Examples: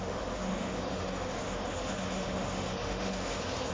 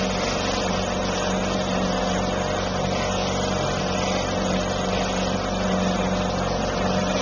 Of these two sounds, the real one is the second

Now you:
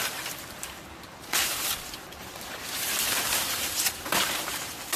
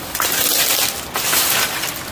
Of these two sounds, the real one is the second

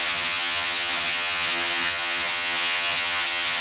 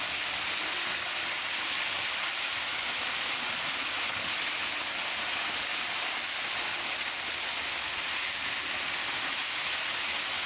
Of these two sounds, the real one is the second